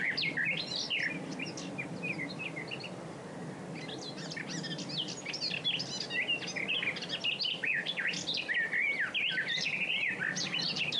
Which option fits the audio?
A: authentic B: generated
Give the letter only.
A